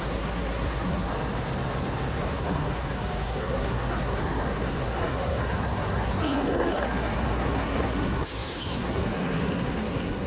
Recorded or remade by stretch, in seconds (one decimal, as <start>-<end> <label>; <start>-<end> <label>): 0.0-1.1 remade; 1.1-2.1 recorded; 2.1-10.3 remade